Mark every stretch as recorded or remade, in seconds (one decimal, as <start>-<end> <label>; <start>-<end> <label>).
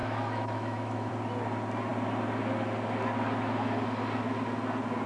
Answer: 0.0-1.1 remade; 1.1-5.1 recorded